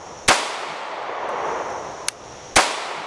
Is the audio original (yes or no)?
yes